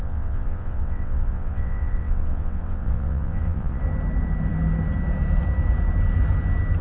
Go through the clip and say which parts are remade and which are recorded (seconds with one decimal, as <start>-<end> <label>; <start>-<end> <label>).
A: 0.0-3.8 remade; 3.8-6.8 recorded

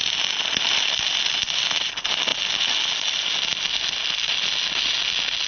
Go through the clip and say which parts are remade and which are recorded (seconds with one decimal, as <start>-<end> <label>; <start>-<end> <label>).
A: 0.0-5.5 recorded

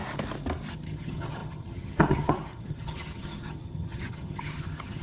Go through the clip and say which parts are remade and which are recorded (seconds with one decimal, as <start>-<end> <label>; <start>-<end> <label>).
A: 0.0-0.7 recorded; 0.7-5.0 remade

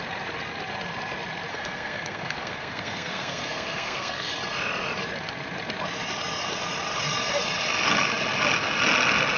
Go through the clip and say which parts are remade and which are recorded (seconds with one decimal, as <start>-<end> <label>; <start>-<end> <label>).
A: 0.0-1.5 recorded; 1.5-4.3 remade; 4.3-9.4 recorded

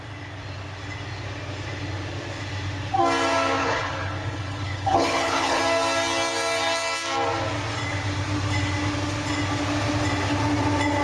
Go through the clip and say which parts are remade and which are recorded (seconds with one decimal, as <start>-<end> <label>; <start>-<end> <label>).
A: 0.0-3.6 recorded; 3.6-5.6 remade; 5.6-11.0 recorded

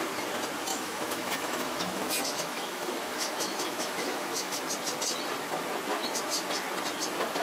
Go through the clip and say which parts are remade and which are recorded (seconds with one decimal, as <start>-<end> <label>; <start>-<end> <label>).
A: 0.0-0.7 recorded; 0.7-4.6 remade; 4.6-7.4 recorded

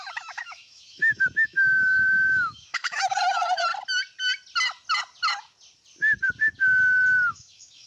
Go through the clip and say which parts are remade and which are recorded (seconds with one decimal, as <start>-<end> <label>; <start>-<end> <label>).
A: 0.0-3.7 remade; 3.7-7.3 recorded; 7.3-7.9 remade

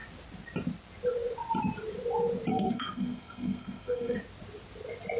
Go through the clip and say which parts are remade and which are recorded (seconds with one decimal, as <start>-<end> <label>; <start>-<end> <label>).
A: 0.0-2.5 recorded; 2.5-4.2 remade; 4.2-5.2 recorded